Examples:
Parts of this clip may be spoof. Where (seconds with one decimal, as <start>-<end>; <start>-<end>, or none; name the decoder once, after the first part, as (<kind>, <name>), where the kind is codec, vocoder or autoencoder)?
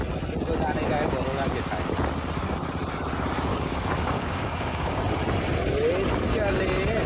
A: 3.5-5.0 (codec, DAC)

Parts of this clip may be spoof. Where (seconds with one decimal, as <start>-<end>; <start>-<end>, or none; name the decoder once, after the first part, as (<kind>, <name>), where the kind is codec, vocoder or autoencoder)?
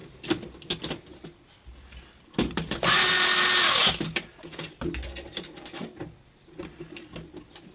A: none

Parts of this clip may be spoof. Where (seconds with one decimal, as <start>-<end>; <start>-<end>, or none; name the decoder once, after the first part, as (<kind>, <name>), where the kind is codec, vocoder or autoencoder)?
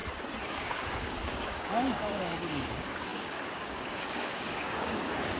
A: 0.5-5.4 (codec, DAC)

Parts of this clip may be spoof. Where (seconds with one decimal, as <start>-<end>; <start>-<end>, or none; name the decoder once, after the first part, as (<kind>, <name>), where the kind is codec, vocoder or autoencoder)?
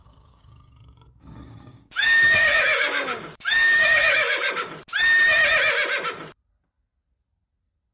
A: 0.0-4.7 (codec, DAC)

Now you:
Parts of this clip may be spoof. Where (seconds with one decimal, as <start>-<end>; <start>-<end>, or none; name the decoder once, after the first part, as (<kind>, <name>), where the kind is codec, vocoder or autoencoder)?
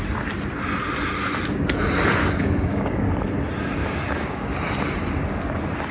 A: 2.2-3.1 (codec, DAC); 3.8-4.5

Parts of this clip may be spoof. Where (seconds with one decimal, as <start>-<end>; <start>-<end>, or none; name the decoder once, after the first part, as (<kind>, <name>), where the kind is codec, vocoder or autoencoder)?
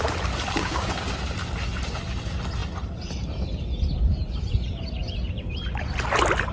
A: 0.6-1.2 (codec, DAC)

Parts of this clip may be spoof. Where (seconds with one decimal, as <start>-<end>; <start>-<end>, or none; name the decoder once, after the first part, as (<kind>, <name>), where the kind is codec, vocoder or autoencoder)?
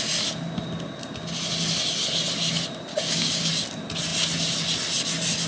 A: 2.9-3.5 (codec, DAC)